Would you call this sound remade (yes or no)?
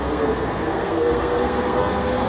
yes